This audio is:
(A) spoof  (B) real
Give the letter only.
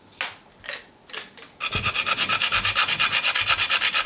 B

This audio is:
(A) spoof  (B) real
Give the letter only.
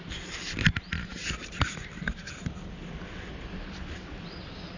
B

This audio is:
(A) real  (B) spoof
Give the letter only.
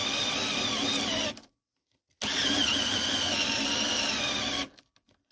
A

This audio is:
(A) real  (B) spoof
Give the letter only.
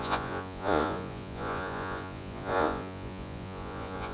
B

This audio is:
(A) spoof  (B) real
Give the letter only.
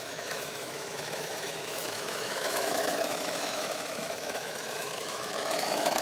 A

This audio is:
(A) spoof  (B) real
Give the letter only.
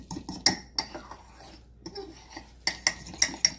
B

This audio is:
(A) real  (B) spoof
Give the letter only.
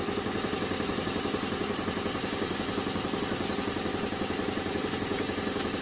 A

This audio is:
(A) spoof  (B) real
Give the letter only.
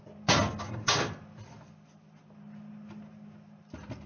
B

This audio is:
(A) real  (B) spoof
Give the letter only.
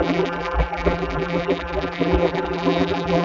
B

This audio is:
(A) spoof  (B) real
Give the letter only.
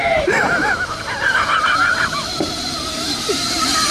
A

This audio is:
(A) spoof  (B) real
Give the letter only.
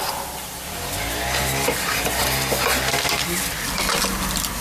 B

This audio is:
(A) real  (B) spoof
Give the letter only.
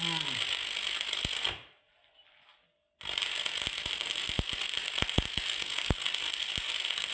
A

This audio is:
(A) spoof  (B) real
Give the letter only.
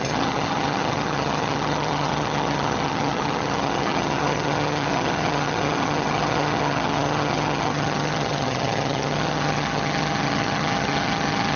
A